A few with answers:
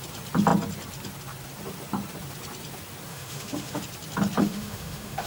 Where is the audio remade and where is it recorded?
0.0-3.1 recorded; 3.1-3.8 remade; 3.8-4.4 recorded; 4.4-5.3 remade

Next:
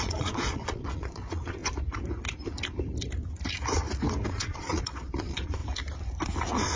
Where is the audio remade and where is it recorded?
0.0-1.6 remade; 1.6-4.3 recorded; 4.3-5.6 remade; 5.6-6.8 recorded

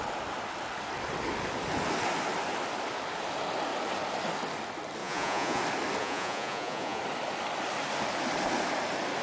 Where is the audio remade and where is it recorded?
0.0-5.0 recorded; 5.0-5.6 remade; 5.6-6.0 recorded; 6.0-7.0 remade; 7.0-9.2 recorded

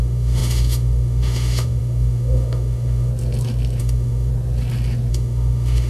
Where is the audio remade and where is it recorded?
0.0-3.1 remade; 3.1-3.8 recorded; 3.8-4.3 remade; 4.3-5.1 recorded; 5.1-5.9 remade

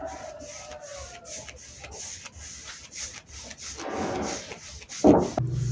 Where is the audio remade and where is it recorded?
0.0-2.8 recorded; 2.8-3.4 remade; 3.4-5.7 recorded

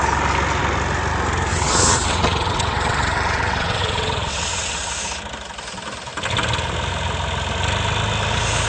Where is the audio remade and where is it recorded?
0.0-1.5 recorded; 1.5-4.9 remade; 4.9-8.7 recorded

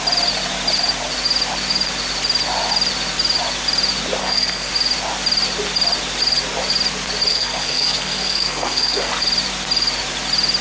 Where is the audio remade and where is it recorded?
0.0-4.2 recorded; 4.2-4.7 remade; 4.7-7.3 recorded; 7.3-9.1 remade; 9.1-10.6 recorded

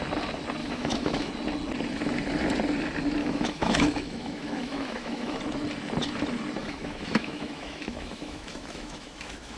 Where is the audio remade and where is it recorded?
0.0-0.6 recorded; 0.6-1.3 remade; 1.3-3.2 recorded; 3.2-5.4 remade; 5.4-6.6 recorded; 6.6-9.6 remade